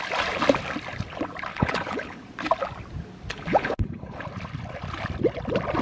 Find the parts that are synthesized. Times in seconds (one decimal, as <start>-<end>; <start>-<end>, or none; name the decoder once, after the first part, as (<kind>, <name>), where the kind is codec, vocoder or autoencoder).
1.5-2.2 (codec, HILCodec); 3.3-4.2